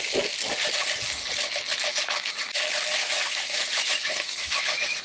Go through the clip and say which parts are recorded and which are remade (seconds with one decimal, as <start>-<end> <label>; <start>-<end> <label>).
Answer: 0.0-1.9 recorded; 1.9-2.5 remade; 2.5-3.0 recorded; 3.0-5.0 remade